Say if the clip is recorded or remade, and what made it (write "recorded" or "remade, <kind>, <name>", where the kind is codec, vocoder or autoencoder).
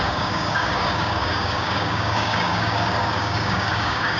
remade, codec, DAC